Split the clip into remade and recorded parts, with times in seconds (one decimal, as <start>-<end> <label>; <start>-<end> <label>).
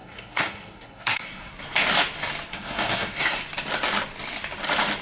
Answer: 0.0-1.5 remade; 1.5-2.5 recorded; 2.5-3.4 remade; 3.4-5.0 recorded